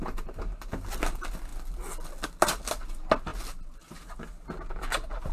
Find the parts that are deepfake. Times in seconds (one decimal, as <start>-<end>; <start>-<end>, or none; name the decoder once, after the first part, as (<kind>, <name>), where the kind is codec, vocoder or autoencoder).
none